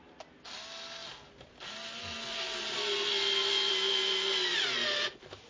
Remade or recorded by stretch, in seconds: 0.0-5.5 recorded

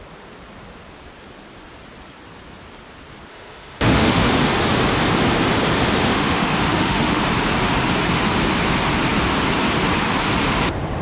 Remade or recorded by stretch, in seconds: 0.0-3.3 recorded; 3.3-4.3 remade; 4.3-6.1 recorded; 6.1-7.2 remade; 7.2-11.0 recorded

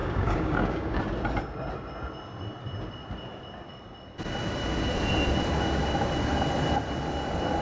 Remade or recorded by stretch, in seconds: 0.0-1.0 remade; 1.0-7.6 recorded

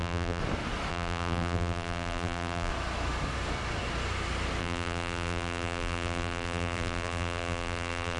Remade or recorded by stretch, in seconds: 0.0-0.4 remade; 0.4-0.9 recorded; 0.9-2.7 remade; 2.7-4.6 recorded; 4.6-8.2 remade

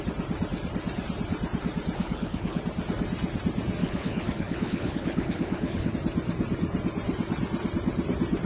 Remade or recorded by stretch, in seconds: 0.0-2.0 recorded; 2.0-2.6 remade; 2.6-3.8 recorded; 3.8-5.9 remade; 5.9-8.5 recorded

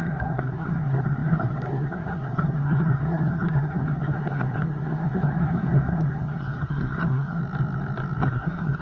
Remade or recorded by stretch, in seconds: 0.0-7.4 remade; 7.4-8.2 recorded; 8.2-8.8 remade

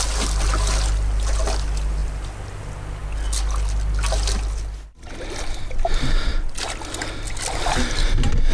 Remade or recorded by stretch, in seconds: 0.0-8.5 recorded

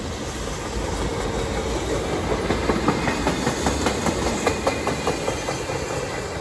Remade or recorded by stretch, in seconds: 0.0-6.4 recorded